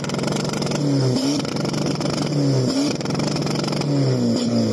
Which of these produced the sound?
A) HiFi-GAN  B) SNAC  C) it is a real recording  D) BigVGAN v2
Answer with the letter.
C